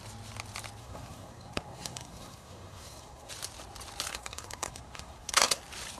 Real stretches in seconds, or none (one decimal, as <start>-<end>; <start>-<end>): 0.0-0.8; 3.3-4.1; 5.6-6.0